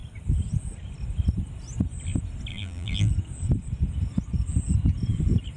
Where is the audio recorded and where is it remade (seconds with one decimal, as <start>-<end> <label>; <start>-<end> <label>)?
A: 0.0-2.5 recorded; 2.5-3.1 remade; 3.1-5.6 recorded